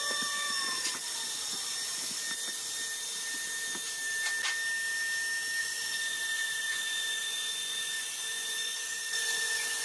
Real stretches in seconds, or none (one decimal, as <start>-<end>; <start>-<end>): 2.2-5.6